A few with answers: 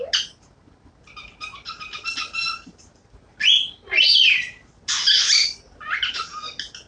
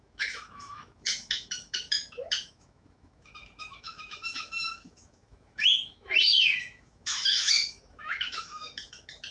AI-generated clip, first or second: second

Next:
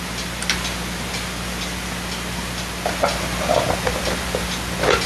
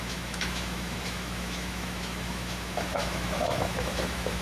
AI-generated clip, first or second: second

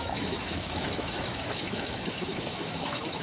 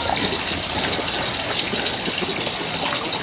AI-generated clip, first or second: first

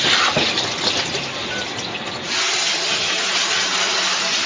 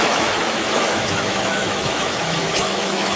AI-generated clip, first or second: second